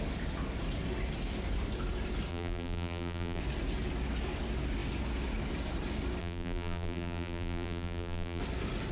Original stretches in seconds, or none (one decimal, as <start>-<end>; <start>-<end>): 0.0-2.3; 3.4-6.2; 8.4-8.9